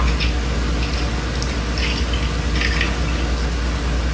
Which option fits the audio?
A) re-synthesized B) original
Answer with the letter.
B